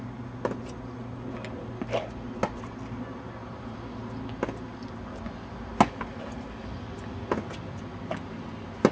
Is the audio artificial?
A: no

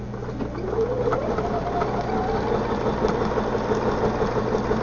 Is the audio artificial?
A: no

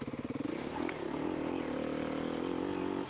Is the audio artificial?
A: no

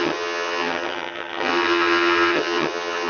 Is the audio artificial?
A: yes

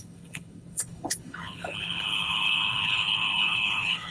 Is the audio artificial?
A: yes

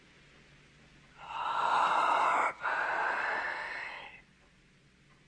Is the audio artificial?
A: no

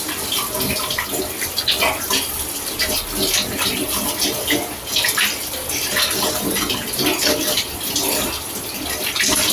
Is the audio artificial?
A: no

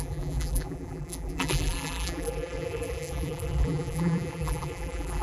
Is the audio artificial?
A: yes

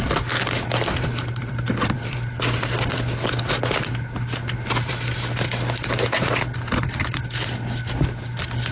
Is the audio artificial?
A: no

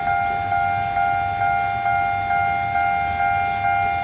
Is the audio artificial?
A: no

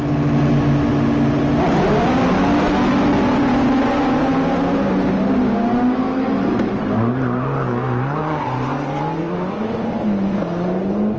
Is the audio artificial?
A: no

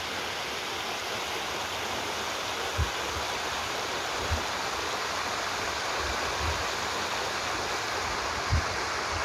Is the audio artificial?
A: no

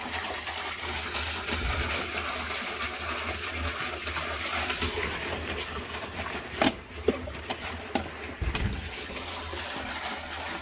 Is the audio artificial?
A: no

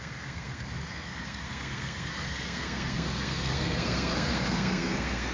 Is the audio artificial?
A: yes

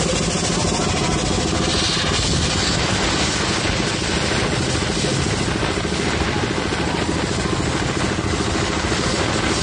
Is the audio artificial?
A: no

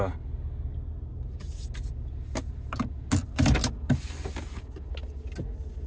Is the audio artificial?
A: no